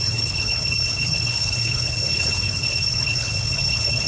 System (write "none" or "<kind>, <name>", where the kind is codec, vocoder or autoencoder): codec, HILCodec